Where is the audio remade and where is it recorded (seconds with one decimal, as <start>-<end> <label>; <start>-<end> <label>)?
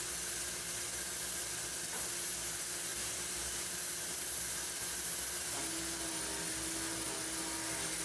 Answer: 0.0-2.9 recorded; 2.9-3.7 remade; 3.7-8.0 recorded